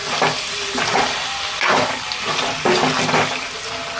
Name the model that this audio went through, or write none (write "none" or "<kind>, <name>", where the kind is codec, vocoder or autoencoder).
none